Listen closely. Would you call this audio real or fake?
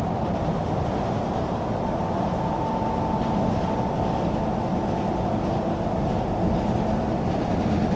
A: real